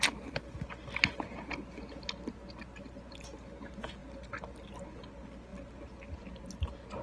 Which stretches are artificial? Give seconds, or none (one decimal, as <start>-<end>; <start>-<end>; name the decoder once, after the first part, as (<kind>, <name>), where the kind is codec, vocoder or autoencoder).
none